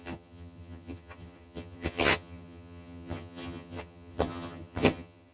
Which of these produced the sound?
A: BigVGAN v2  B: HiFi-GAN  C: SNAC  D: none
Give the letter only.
B